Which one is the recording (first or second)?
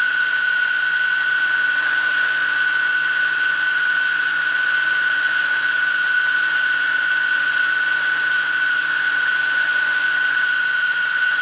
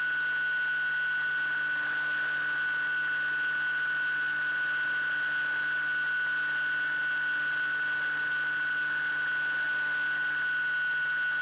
second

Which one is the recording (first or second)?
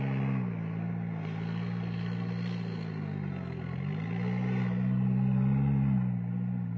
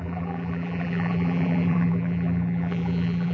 first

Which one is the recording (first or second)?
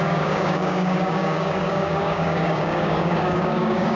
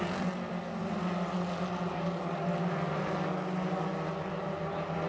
second